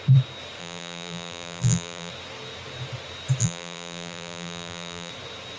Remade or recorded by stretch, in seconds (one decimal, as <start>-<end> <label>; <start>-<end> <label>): 0.0-0.6 recorded; 0.6-2.1 remade; 2.1-3.4 recorded; 3.4-5.1 remade; 5.1-5.6 recorded